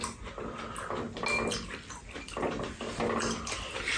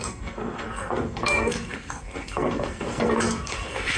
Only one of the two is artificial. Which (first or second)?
second